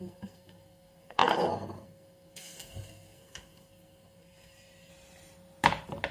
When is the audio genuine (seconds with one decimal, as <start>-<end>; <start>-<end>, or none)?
4.9-6.1